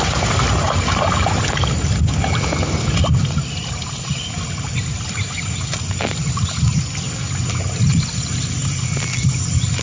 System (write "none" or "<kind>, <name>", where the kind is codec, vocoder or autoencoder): none